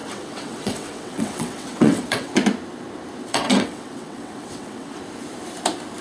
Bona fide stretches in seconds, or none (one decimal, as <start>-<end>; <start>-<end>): 2.3-3.2; 5.0-6.0